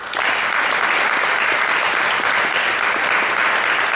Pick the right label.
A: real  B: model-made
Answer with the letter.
A